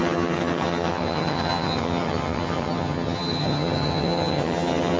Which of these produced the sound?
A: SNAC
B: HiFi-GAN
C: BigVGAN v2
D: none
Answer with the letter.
B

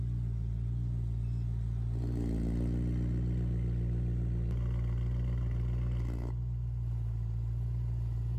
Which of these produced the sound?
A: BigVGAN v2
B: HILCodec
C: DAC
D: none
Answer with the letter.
D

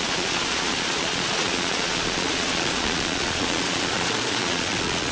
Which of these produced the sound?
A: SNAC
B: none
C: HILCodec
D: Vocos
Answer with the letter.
D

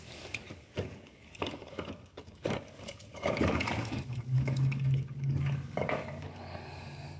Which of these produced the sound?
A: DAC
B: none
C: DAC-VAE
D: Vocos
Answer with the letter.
A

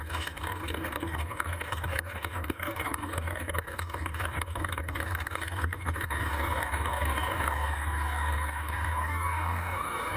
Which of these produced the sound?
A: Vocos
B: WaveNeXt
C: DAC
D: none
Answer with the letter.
C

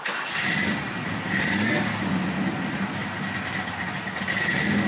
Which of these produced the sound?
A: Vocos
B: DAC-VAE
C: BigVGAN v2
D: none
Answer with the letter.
D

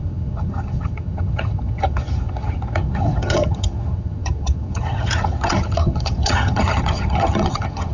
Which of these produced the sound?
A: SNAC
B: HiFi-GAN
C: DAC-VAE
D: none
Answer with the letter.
B